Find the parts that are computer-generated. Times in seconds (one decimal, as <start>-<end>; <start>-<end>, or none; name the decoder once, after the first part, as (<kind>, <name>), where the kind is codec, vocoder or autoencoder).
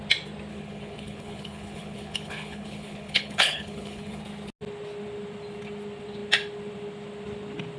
0.5-4.2 (codec, HILCodec)